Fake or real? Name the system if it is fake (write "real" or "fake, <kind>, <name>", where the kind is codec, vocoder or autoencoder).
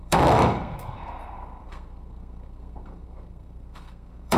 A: fake, codec, SNAC